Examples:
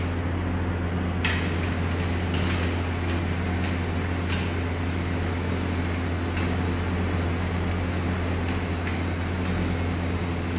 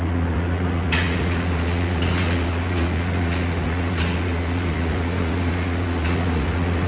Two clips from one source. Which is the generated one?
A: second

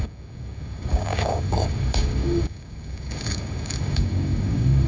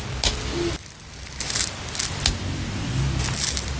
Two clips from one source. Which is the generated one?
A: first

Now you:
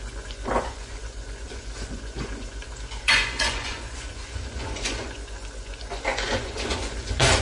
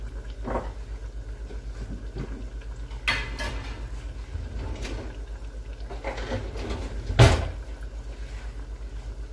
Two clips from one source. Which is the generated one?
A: first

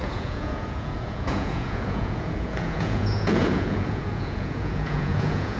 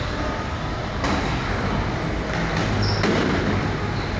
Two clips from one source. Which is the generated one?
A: first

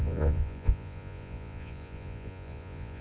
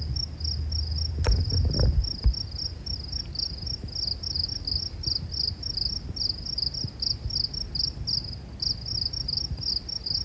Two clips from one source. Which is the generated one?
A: first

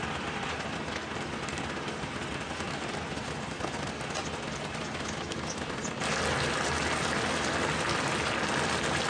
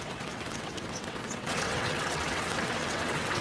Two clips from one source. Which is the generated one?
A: second